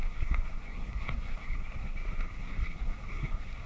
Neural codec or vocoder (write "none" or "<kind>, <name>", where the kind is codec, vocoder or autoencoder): codec, SNAC